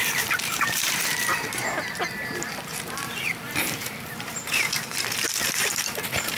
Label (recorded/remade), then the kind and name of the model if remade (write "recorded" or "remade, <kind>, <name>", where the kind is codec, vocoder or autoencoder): remade, vocoder, BigVGAN v2